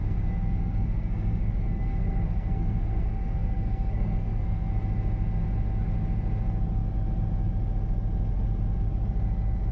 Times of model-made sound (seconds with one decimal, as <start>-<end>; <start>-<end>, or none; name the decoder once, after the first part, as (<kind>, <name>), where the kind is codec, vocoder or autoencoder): 0.0-4.7 (codec, SNAC)